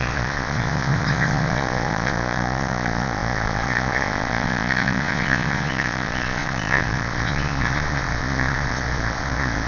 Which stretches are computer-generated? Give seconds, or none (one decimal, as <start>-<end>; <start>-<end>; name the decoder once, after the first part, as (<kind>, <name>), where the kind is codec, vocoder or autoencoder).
0.0-9.7 (vocoder, Vocos)